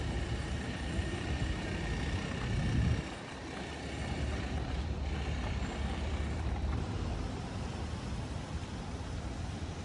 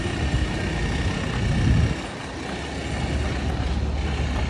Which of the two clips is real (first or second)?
second